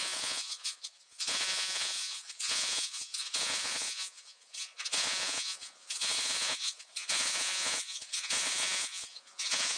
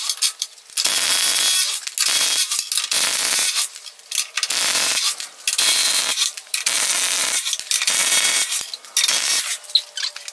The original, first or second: second